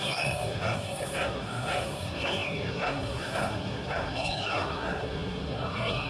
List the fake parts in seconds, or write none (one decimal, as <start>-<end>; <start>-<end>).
0.0-6.1